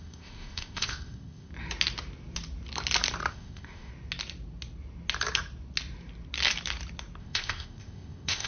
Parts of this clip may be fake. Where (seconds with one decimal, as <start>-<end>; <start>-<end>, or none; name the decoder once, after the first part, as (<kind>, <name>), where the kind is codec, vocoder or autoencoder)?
0.0-1.5 (codec, ZipCodec); 3.3-3.9; 7.2-8.5